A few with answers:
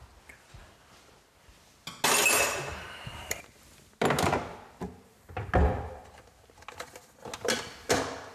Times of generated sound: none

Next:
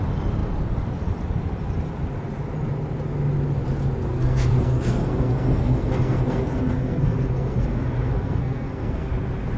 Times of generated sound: 4.1-9.1 (codec, SNAC)